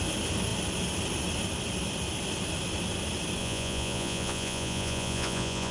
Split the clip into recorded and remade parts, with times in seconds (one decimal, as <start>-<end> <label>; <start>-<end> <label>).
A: 0.0-3.4 recorded; 3.4-5.7 remade